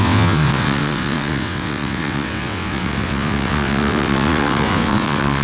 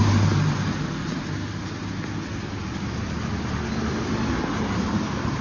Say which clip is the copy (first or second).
first